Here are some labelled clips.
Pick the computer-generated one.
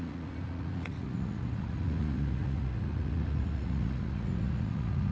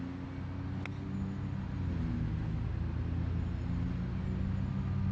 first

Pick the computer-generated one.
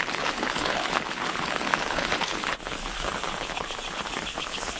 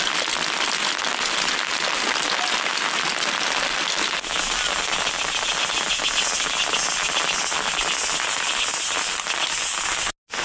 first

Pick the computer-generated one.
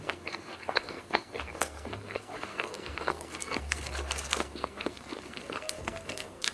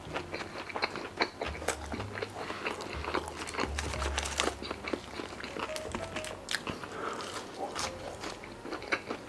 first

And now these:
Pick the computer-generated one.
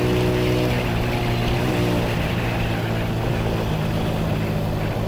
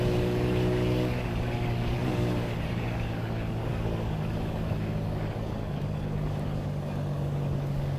second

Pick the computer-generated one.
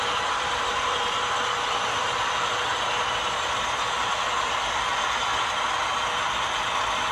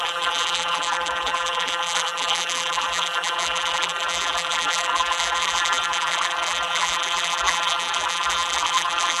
second